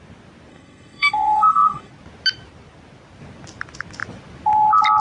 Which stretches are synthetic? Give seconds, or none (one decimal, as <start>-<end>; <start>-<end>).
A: 0.5-1.9